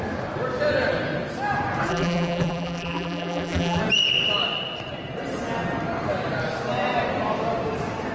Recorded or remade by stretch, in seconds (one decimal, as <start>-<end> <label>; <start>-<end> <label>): 0.0-1.9 recorded; 1.9-3.8 remade; 3.8-8.1 recorded